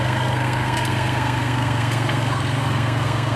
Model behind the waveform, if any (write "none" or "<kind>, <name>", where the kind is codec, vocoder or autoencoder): codec, SNAC